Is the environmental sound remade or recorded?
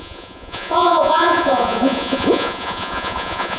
remade